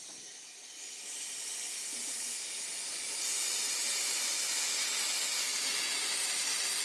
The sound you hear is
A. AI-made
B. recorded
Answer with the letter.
B